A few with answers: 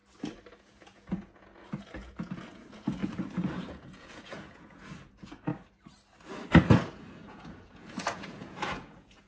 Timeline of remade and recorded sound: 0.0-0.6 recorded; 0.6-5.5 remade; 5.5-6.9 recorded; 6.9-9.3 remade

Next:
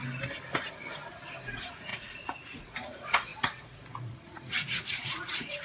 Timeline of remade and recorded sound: 0.0-0.7 recorded; 0.7-5.6 remade

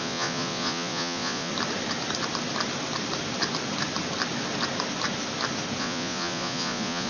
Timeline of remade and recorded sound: 0.0-1.5 remade; 1.5-5.8 recorded; 5.8-7.1 remade

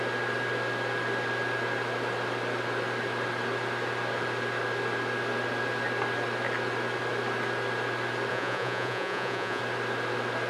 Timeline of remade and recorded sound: 0.0-8.3 recorded; 8.3-9.6 remade; 9.6-10.5 recorded

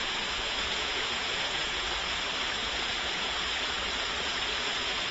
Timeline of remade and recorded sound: 0.0-2.2 remade; 2.2-2.6 recorded; 2.6-5.1 remade

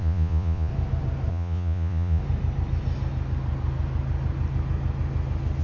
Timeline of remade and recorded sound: 0.0-0.7 remade; 0.7-1.3 recorded; 1.3-2.2 remade; 2.2-5.6 recorded

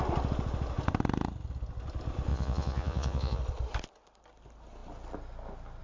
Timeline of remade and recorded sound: 0.0-2.3 recorded; 2.3-3.4 remade; 3.4-5.8 recorded